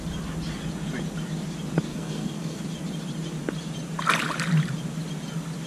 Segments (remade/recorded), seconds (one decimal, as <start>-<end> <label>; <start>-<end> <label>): 0.0-1.9 recorded; 1.9-2.6 remade; 2.6-5.7 recorded

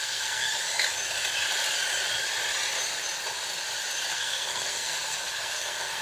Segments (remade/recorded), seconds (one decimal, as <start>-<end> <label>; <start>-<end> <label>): 0.0-0.5 remade; 0.5-4.1 recorded; 4.1-6.0 remade